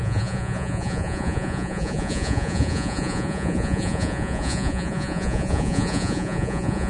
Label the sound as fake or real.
fake